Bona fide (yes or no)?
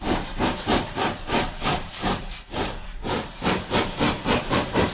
no